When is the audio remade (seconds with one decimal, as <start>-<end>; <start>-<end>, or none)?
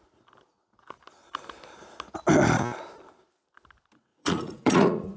4.1-5.2